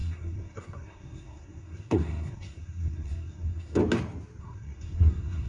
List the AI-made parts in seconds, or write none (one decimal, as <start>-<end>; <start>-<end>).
0.0-3.8; 4.4-5.5